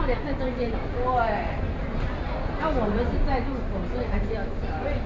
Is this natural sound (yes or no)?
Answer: yes